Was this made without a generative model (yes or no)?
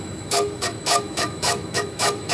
no